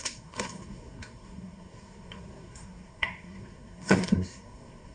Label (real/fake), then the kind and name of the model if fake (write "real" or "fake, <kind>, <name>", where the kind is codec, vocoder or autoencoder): fake, codec, SNAC